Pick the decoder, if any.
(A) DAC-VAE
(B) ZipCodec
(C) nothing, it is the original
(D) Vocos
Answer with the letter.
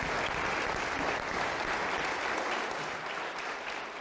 C